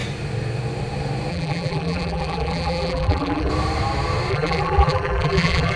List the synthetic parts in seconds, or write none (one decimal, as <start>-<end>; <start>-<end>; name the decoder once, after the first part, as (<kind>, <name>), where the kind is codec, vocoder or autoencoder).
1.3-3.5 (vocoder, BigVGAN v2); 4.3-5.8